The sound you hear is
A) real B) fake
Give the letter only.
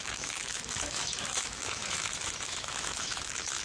B